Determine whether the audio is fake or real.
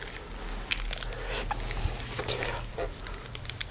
real